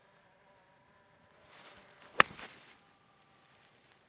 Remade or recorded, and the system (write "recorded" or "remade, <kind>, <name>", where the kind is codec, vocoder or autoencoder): remade, vocoder, BigVGAN v2